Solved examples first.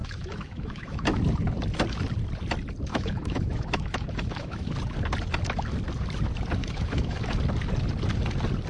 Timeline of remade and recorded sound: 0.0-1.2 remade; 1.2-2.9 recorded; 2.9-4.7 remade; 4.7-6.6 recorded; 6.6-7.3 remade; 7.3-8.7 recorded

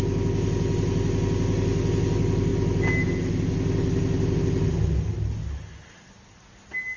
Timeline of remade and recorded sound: 0.0-7.0 recorded

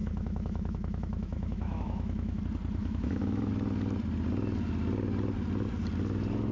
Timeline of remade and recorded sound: 0.0-2.4 remade; 2.4-2.8 recorded; 2.8-3.5 remade; 3.5-6.5 recorded

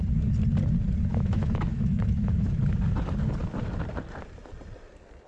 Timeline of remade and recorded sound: 0.0-1.1 recorded; 1.1-2.6 remade; 2.6-5.3 recorded

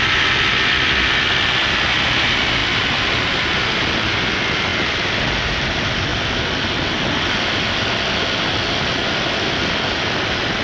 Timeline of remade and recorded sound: 0.0-10.6 recorded

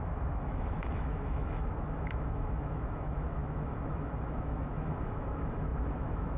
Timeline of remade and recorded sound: 0.0-6.4 remade

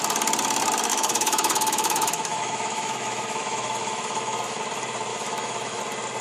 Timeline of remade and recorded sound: 0.0-0.9 recorded; 0.9-4.6 remade; 4.6-5.1 recorded; 5.1-5.8 remade; 5.8-6.2 recorded

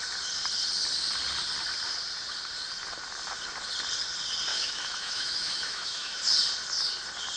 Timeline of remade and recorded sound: 0.0-4.5 recorded; 4.5-6.2 remade; 6.2-7.4 recorded